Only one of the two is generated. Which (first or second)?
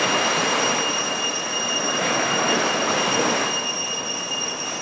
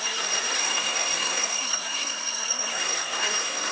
second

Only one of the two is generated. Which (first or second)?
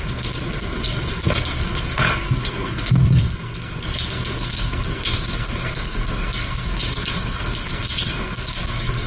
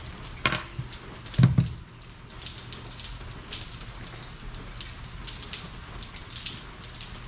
first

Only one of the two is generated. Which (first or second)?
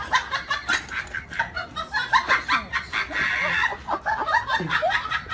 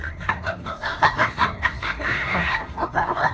second